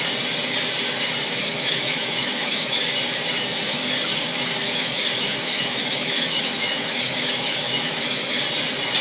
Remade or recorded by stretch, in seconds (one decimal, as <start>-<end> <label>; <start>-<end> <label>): 0.0-1.3 recorded; 1.3-2.8 remade; 2.8-4.3 recorded; 4.3-8.4 remade; 8.4-9.0 recorded